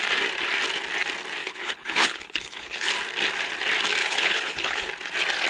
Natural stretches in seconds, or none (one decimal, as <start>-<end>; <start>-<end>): 0.0-1.4; 2.9-4.0; 4.9-5.5